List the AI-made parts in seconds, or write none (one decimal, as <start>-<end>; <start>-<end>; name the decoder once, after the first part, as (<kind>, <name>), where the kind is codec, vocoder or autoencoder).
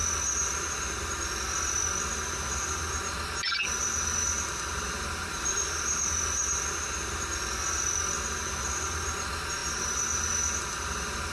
none